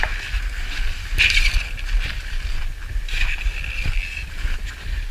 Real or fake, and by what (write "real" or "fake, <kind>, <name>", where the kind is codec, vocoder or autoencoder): real